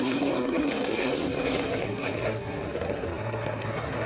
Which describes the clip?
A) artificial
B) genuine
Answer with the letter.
A